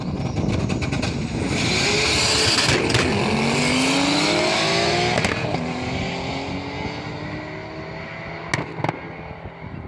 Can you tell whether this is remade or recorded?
recorded